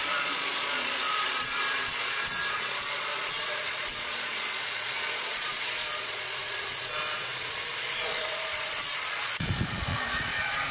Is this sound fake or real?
fake